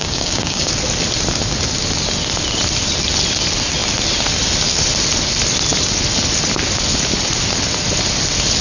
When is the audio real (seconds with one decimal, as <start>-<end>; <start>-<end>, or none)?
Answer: 0.7-8.6

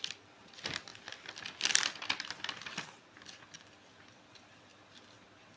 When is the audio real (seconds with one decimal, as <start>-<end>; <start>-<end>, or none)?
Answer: 0.0-5.6

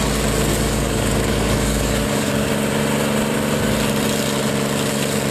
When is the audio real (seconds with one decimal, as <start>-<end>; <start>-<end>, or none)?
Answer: 0.0-0.5; 2.5-5.3

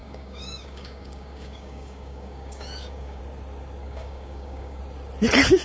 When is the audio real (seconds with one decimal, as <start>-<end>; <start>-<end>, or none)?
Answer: 3.2-3.8; 4.8-5.6